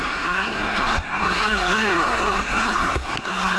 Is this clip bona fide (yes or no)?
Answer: no